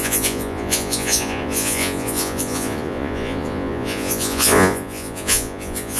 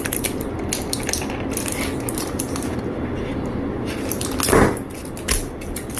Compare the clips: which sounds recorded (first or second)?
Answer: second